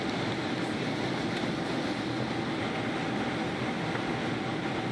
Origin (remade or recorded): recorded